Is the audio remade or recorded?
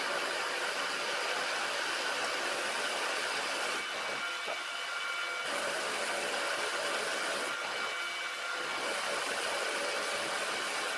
recorded